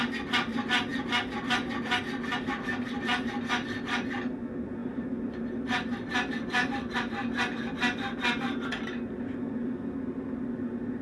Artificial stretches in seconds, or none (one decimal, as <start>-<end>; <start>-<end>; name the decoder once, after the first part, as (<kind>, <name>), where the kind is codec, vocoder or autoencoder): none